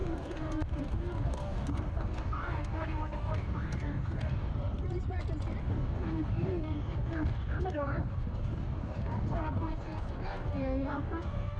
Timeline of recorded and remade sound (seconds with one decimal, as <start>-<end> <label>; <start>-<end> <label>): 0.0-4.5 remade; 4.5-5.6 recorded; 5.6-11.6 remade